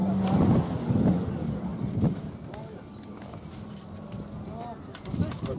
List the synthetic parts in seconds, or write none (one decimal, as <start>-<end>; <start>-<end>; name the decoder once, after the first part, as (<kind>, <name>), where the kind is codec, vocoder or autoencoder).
none